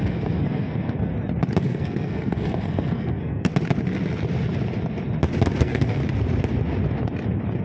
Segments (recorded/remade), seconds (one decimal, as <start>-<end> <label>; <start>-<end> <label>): 0.0-1.1 remade; 1.1-1.6 recorded; 1.6-3.5 remade; 3.5-5.6 recorded; 5.6-6.0 remade; 6.0-7.6 recorded